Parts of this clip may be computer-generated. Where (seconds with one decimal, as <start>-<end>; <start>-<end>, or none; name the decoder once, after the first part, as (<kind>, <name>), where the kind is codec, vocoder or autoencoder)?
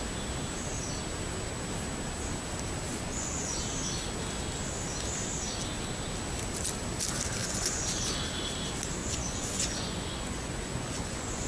2.9-3.6 (vocoder, Vocos); 7.4-8.1; 9.0-11.5